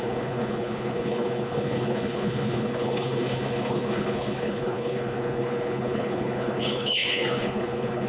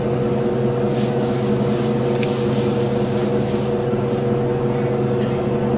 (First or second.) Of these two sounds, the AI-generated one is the first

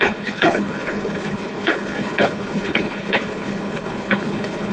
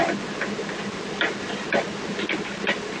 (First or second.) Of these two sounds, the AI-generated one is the first